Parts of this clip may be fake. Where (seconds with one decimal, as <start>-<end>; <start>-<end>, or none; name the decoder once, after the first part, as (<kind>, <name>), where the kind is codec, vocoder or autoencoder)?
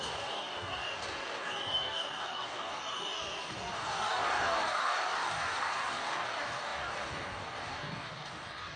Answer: 0.0-8.8 (codec, DAC)